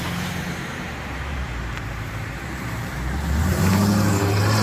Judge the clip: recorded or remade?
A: remade